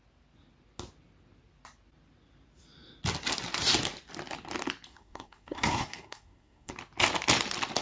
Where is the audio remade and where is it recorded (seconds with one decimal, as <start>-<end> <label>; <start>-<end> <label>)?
0.0-4.9 recorded; 4.9-6.7 remade; 6.7-7.8 recorded